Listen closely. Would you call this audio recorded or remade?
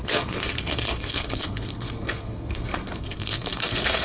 remade